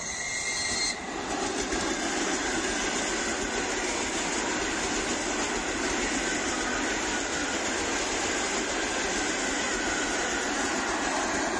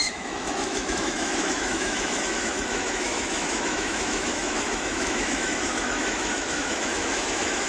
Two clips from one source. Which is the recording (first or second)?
first